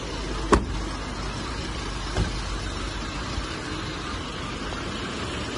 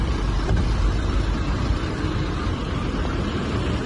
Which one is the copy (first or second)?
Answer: second